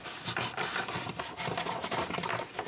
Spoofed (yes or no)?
no